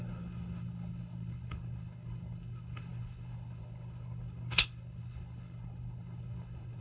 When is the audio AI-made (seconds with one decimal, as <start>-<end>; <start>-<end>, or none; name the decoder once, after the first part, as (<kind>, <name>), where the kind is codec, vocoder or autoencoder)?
0.0-6.8 (codec, HILCodec)